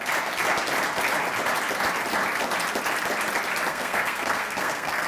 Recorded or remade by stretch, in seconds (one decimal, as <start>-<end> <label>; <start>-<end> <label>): 0.0-3.7 recorded; 3.7-5.1 remade